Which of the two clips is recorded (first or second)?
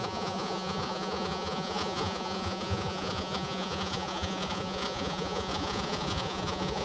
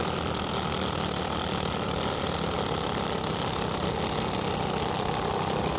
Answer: second